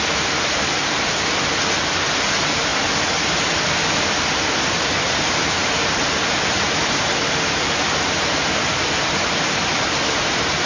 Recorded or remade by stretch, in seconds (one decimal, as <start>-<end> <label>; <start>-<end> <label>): 0.0-10.7 recorded